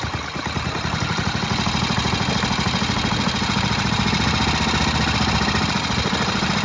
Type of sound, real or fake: real